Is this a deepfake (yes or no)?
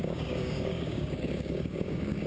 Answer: yes